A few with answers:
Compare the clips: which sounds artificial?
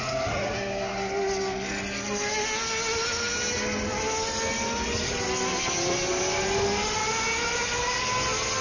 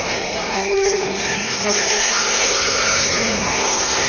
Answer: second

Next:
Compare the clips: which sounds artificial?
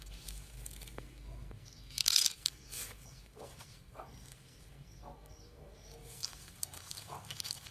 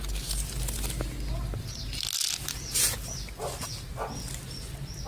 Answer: first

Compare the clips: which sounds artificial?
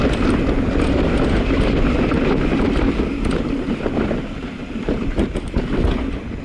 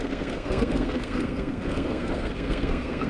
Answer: second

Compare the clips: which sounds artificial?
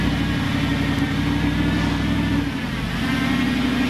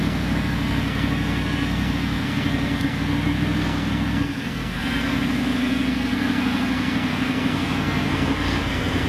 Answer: second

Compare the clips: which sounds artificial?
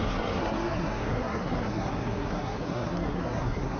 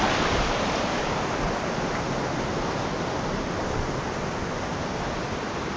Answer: first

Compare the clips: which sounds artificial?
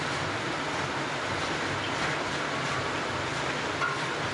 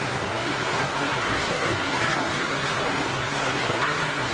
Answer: second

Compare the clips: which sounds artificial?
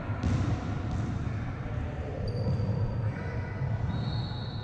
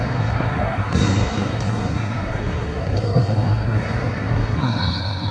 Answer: second